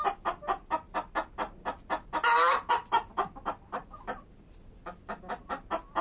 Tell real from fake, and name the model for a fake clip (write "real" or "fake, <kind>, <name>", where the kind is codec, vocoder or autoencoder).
real